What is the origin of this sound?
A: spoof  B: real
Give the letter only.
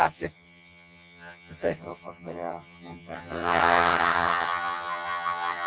A